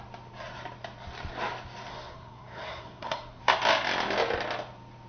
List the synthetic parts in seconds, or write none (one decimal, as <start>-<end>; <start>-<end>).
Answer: 1.9-3.4